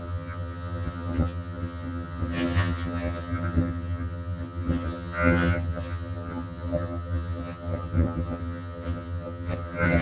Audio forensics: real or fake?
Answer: fake